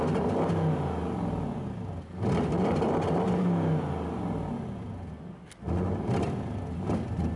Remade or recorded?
recorded